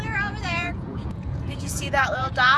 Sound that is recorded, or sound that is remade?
remade